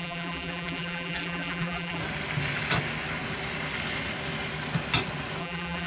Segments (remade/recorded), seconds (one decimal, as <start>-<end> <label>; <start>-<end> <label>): 0.0-2.0 remade; 2.0-5.4 recorded; 5.4-5.9 remade